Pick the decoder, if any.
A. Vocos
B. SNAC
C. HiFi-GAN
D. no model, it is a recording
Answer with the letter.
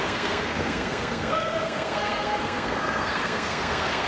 B